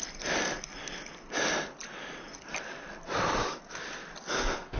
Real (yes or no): yes